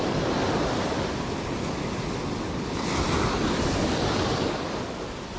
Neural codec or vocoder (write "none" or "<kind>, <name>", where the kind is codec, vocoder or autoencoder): none